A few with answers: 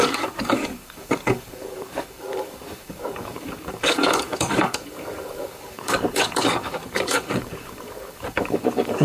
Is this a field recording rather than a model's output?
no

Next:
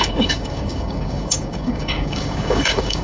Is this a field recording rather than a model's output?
no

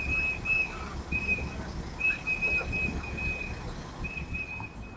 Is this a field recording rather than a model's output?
yes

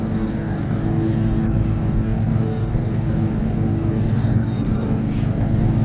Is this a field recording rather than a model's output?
no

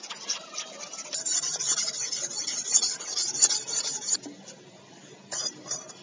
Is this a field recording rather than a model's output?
yes